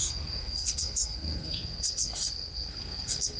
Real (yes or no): no